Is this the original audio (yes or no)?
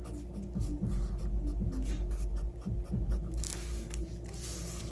yes